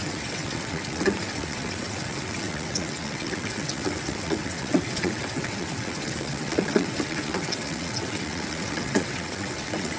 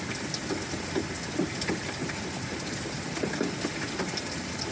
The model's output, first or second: first